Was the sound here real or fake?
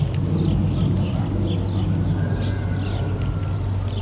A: real